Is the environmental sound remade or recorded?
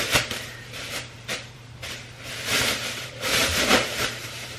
remade